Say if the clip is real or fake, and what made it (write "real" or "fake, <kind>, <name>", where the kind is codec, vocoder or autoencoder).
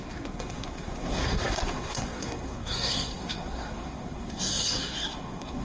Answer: fake, codec, SNAC